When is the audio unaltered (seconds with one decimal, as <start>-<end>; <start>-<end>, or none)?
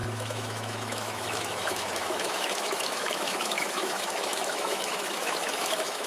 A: none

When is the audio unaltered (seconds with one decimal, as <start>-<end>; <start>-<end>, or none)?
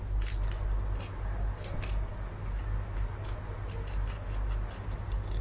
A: 0.0-5.4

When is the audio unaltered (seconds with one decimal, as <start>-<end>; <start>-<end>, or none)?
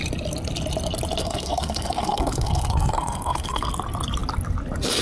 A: 0.0-1.2; 3.7-5.0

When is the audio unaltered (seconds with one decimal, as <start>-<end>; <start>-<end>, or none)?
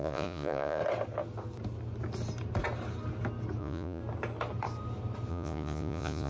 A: 0.8-3.6; 4.0-5.3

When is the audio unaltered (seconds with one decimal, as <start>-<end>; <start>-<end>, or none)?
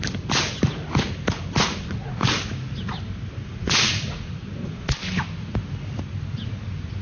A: 0.0-1.6; 2.3-3.4; 4.9-7.0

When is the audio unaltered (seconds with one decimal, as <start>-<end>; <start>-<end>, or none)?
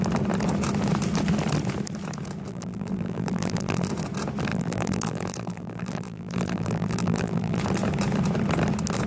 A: 0.0-2.5; 3.9-4.5; 7.6-9.1